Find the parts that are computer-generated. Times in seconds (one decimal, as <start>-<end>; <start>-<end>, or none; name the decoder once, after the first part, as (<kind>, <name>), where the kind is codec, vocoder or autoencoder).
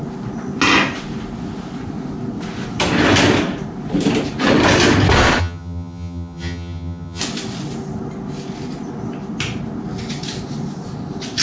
5.4-7.2 (vocoder, HiFi-GAN)